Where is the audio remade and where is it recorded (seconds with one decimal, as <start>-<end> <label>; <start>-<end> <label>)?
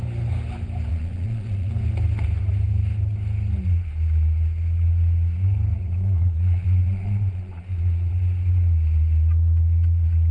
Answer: 0.0-0.9 recorded; 0.9-1.7 remade; 1.7-5.8 recorded; 5.8-8.1 remade; 8.1-10.3 recorded